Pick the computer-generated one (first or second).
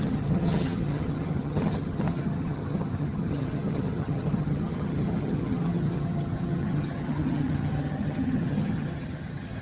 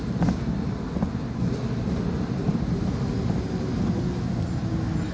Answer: first